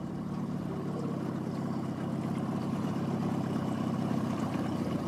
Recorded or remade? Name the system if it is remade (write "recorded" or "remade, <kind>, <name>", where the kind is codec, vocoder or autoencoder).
recorded